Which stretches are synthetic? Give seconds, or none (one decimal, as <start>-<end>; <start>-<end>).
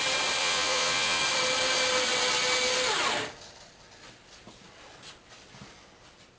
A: 0.4-1.2